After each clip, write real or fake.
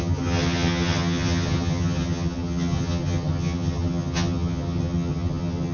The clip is fake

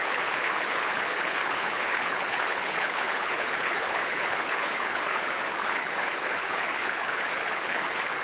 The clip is fake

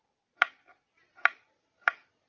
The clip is real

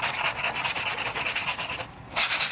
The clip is real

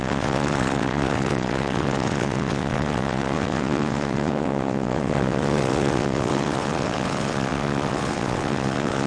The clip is fake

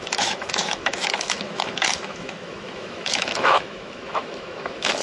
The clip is fake